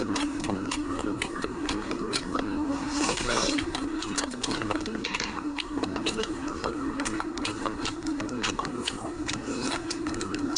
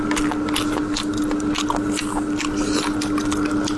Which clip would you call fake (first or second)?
first